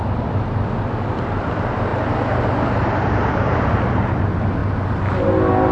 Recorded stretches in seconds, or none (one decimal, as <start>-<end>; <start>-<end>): 0.0-5.7